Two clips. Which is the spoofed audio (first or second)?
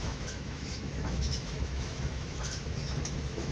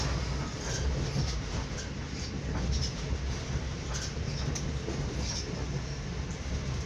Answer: first